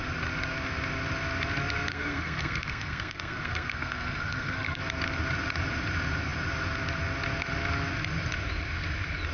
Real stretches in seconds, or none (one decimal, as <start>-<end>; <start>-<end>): 0.0-1.9; 4.8-9.3